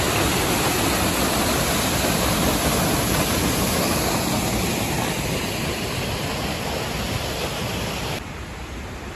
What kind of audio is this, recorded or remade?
recorded